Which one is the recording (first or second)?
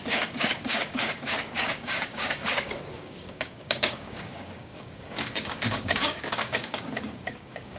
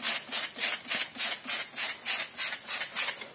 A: second